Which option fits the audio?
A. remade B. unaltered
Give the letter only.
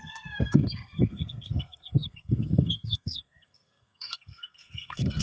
A